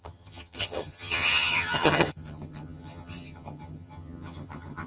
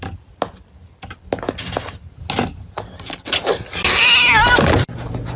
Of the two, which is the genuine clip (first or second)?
second